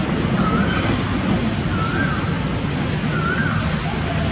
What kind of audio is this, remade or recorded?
recorded